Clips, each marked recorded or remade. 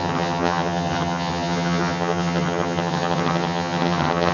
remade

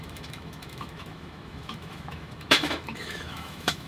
remade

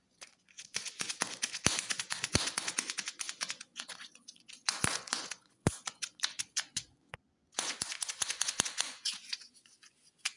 remade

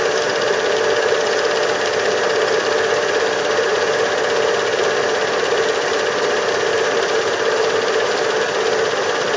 recorded